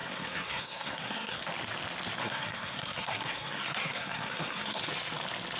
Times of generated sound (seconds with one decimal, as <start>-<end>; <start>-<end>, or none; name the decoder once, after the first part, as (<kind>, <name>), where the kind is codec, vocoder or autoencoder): 0.0-1.4 (codec, SNAC); 2.2-4.9